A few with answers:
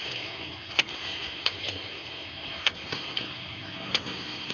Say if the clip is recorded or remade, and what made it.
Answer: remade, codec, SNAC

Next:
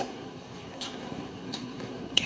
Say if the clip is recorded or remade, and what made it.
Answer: remade, codec, SNAC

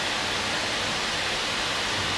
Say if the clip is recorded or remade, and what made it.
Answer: recorded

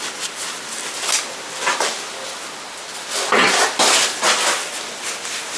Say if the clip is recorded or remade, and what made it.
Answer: recorded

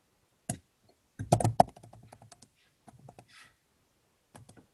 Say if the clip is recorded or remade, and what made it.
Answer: recorded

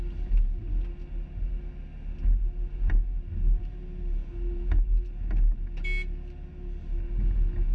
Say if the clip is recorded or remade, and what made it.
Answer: recorded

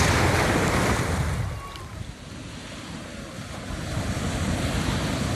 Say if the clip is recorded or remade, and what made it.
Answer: recorded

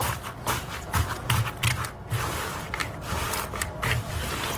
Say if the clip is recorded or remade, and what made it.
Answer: recorded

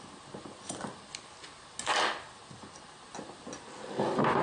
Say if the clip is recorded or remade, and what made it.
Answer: recorded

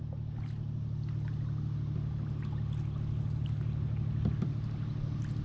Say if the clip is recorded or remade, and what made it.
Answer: recorded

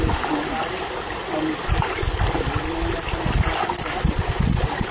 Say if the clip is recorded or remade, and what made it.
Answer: recorded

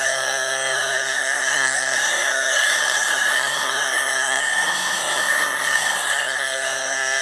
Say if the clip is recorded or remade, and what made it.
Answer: remade, codec, SNAC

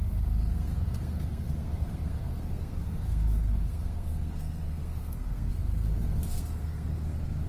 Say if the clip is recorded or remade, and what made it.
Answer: remade, codec, SNAC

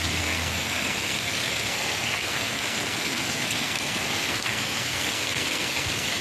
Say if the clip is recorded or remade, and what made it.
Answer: remade, codec, SNAC